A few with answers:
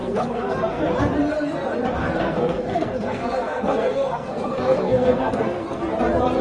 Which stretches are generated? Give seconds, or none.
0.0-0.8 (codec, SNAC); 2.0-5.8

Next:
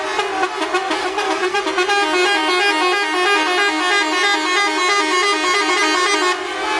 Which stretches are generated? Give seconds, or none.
1.0-1.6 (codec, SNAC)

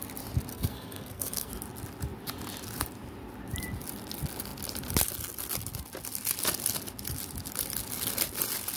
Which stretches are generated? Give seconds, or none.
0.5-1.5 (codec, SNAC)

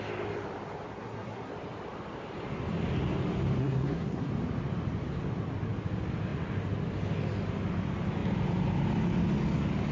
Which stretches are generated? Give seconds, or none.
0.9-1.5 (codec, SNAC); 3.6-4.3

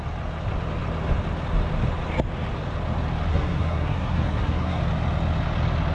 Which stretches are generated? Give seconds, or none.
3.3-4.8 (codec, SNAC)

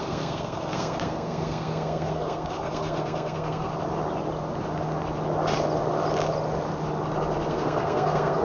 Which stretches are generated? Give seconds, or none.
0.0-3.7 (codec, SNAC); 7.5-8.4